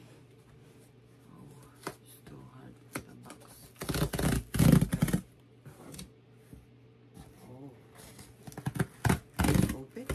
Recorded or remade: recorded